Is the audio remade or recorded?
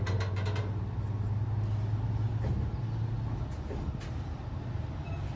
recorded